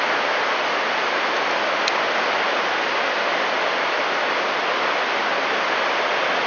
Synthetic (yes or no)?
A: no